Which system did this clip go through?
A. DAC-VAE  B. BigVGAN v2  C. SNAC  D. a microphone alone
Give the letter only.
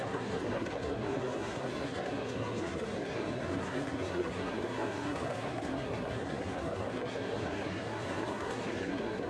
C